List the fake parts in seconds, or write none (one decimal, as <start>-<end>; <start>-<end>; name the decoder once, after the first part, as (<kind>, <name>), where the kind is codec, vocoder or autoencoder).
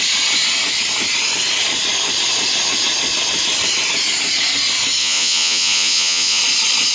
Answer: 5.0-6.4 (vocoder, Vocos)